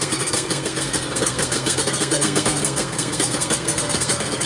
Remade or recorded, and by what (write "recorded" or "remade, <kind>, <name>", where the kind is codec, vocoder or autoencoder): remade, codec, SNAC